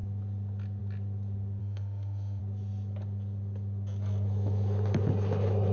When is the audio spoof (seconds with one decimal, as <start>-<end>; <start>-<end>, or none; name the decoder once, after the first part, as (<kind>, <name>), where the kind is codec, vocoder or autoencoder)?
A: 1.6-2.4 (autoencoder, DAC-VAE)